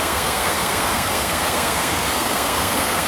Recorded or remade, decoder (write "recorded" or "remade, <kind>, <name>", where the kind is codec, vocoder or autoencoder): remade, codec, SNAC